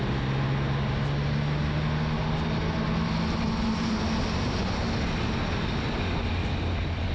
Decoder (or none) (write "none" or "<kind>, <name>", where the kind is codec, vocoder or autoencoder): none